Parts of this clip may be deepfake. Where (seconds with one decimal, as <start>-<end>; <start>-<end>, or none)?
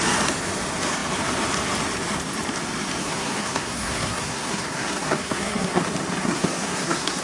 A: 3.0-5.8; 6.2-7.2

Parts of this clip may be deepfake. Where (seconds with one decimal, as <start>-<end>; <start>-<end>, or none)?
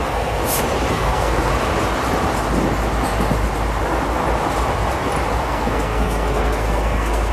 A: 0.0-0.4; 0.9-1.5; 5.4-7.3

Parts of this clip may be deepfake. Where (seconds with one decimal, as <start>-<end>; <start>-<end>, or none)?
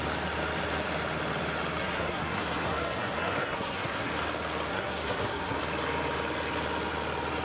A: 1.8-4.1; 4.7-5.6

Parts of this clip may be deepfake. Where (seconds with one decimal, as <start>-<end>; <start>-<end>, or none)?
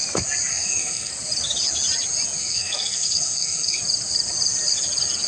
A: 0.5-1.1; 2.4-3.8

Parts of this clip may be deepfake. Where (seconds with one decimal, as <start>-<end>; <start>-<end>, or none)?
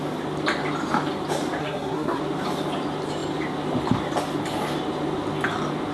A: 1.6-2.2